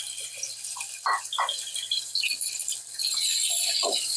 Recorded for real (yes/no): no